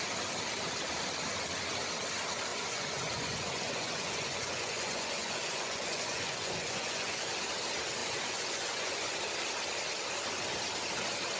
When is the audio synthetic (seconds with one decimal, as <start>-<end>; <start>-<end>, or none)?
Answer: 2.5-7.3; 8.0-9.2